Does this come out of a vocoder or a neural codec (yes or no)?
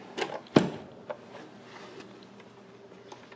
no